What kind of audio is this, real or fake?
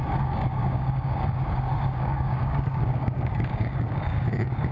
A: fake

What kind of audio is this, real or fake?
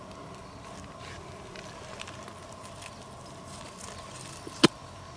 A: real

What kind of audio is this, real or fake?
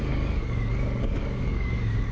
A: fake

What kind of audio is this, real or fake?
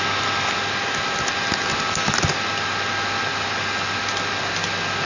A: real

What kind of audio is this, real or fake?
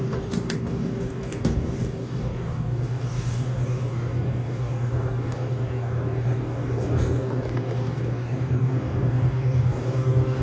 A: fake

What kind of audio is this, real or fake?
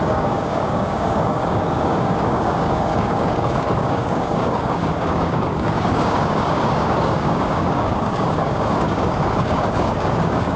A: fake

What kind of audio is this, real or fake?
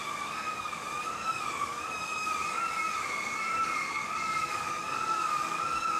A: fake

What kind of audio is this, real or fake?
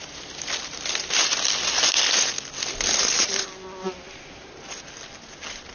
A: real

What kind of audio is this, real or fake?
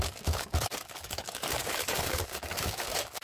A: fake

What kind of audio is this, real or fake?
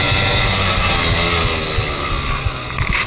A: real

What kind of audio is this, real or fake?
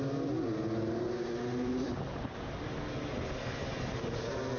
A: real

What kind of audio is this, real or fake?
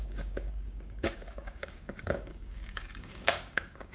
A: fake